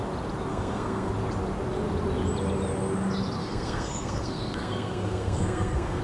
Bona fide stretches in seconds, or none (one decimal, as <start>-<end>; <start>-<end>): 0.0-0.5; 1.1-3.4